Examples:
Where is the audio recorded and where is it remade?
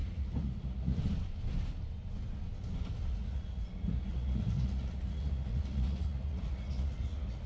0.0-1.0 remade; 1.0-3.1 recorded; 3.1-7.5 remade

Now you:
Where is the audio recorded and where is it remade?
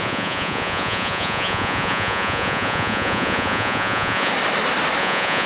0.0-4.3 remade; 4.3-5.0 recorded; 5.0-5.5 remade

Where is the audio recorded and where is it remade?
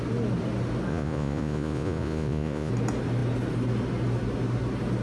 0.0-0.9 recorded; 0.9-2.7 remade; 2.7-5.0 recorded